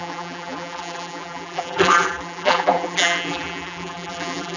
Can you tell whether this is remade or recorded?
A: remade